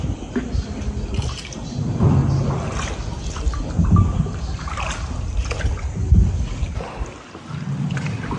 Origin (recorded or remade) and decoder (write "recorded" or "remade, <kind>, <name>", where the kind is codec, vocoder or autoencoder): recorded